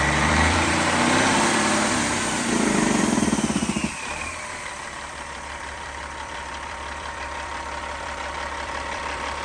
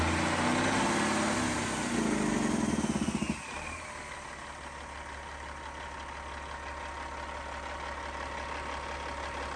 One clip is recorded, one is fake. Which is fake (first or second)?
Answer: first